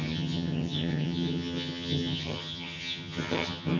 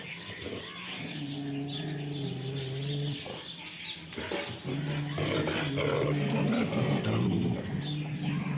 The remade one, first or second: first